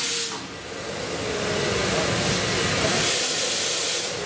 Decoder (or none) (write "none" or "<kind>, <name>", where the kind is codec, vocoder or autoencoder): none